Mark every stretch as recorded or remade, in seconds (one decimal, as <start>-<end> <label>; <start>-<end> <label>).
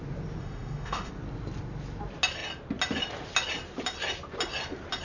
0.0-0.4 recorded; 0.4-1.1 remade; 1.1-5.0 recorded